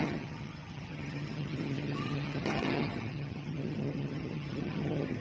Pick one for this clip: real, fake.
fake